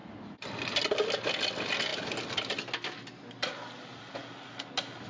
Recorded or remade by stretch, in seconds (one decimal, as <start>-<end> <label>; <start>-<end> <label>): 0.0-5.1 recorded